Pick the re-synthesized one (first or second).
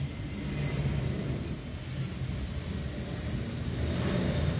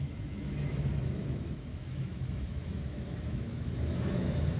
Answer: second